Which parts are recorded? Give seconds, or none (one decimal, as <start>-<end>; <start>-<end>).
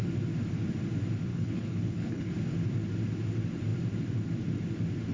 0.0-1.3; 2.3-5.1